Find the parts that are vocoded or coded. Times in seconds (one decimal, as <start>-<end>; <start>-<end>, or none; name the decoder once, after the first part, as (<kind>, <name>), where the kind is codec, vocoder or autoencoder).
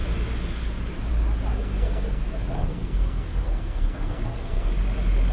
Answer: 1.5-4.7 (codec, SNAC)